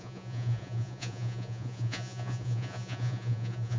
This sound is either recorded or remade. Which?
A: remade